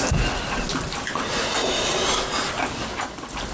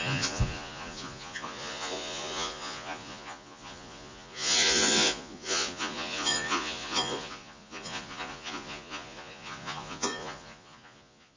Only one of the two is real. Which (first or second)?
first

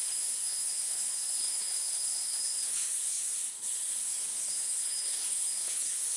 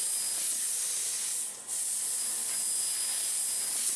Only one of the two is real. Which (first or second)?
second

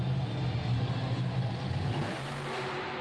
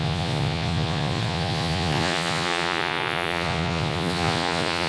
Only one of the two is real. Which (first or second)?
first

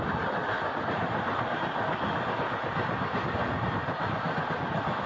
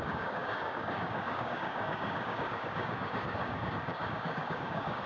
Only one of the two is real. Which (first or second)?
first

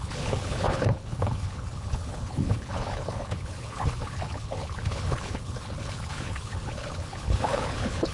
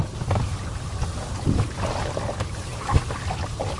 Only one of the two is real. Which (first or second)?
second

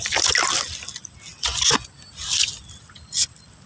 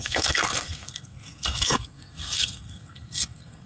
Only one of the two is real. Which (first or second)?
first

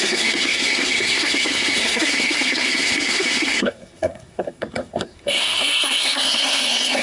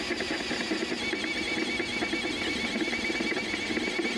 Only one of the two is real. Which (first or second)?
second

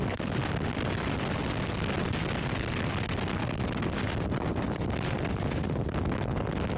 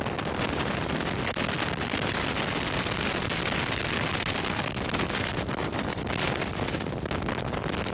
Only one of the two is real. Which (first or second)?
first